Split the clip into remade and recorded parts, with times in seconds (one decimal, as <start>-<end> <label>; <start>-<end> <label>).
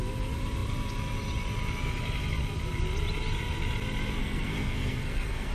0.0-4.2 recorded; 4.2-5.5 remade